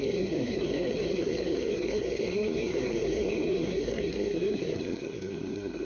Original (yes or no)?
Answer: no